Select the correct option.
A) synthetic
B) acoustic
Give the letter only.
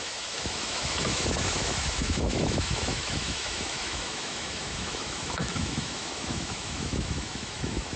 A